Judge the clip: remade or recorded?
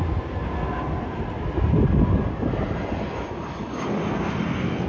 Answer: recorded